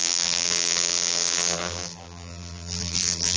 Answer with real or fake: fake